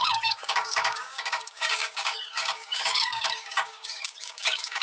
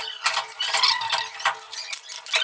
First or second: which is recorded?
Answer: second